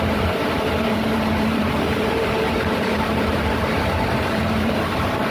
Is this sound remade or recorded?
remade